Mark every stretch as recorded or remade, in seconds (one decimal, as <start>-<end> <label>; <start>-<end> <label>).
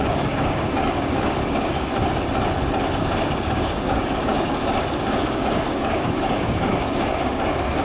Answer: 0.0-1.9 remade; 1.9-3.0 recorded; 3.0-7.8 remade